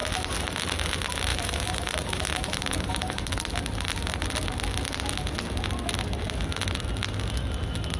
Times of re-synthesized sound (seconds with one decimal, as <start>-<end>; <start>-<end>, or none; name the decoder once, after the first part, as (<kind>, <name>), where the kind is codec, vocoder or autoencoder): 1.3-3.3 (vocoder, BigVGAN v2)